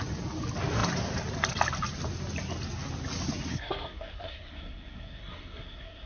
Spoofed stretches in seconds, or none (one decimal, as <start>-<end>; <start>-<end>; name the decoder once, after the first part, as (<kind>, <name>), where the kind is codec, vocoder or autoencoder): 3.5-6.1 (codec, SNAC)